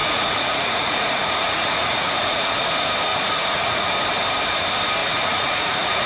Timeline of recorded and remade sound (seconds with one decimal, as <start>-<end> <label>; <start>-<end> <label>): 0.0-2.6 remade; 2.6-3.1 recorded; 3.1-3.9 remade; 3.9-5.0 recorded; 5.0-6.1 remade